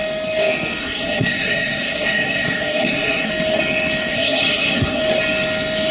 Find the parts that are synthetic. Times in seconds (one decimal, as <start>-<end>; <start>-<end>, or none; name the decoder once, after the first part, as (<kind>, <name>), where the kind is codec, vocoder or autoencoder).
0.8-3.3 (codec, SNAC); 4.1-5.0